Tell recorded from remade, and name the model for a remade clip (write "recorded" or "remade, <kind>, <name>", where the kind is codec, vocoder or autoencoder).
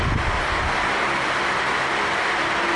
recorded